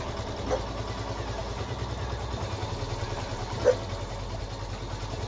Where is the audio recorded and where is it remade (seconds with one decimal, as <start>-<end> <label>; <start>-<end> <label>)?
0.0-3.0 recorded; 3.0-3.6 remade; 3.6-5.3 recorded